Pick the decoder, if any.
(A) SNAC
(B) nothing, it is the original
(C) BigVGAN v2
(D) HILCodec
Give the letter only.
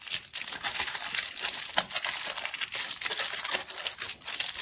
B